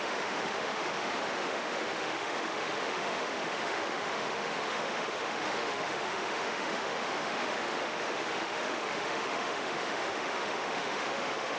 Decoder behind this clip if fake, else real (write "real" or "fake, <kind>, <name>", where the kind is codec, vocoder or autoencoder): fake, autoencoder, DAC-VAE